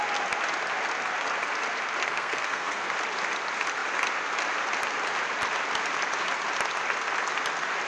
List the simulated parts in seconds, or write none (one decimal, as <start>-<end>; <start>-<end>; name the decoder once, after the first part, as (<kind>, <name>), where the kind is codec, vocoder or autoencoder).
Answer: 2.0-2.9 (codec, SNAC)